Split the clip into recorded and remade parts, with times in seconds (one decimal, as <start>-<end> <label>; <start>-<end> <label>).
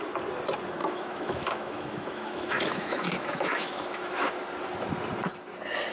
0.0-0.8 recorded; 0.8-4.3 remade; 4.3-5.9 recorded